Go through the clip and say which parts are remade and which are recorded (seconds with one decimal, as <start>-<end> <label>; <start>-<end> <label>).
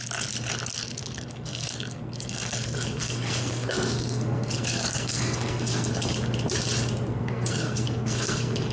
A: 0.0-1.0 recorded; 1.0-5.9 remade; 5.9-7.1 recorded; 7.1-8.7 remade